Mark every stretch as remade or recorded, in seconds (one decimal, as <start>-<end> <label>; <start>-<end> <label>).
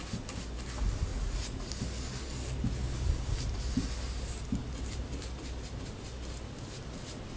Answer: 0.0-1.1 recorded; 1.1-1.7 remade; 1.7-7.4 recorded